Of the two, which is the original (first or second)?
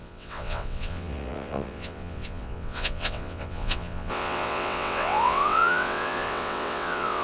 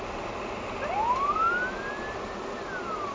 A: second